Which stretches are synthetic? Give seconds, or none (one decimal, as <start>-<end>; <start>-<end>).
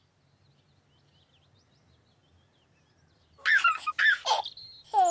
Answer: none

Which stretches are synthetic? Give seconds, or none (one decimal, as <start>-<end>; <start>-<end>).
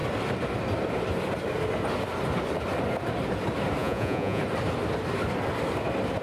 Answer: 3.8-4.4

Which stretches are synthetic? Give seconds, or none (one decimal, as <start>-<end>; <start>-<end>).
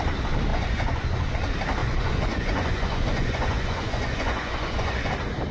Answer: 0.5-1.2; 1.8-5.1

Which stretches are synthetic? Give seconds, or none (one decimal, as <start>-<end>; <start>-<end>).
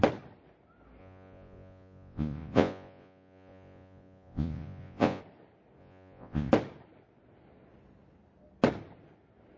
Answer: 1.0-5.2; 5.8-6.5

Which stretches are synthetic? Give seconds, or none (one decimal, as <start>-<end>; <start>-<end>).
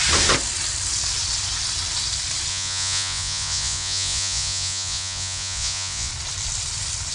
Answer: 2.5-6.1